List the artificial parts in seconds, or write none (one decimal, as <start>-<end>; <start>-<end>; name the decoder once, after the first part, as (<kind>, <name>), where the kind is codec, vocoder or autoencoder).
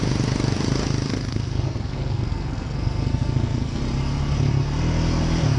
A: 1.1-3.8 (codec, SNAC)